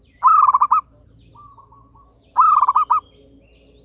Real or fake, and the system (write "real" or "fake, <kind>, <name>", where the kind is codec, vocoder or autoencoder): real